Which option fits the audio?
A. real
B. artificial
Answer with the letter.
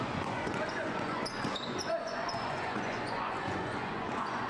B